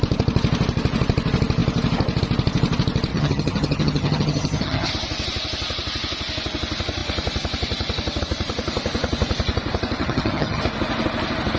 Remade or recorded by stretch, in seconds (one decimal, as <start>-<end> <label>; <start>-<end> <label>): 0.0-3.1 recorded; 3.1-4.9 remade; 4.9-10.0 recorded; 10.0-10.6 remade; 10.6-11.6 recorded